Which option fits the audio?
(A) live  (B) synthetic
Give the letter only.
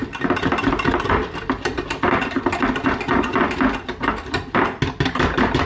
A